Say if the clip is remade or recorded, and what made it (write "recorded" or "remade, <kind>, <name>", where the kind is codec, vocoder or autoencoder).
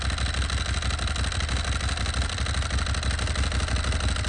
recorded